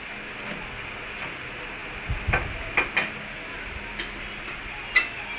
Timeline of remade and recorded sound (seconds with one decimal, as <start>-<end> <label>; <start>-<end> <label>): 0.0-5.4 recorded